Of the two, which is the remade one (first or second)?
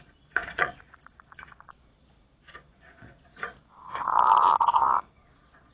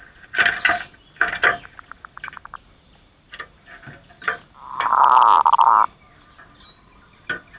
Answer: first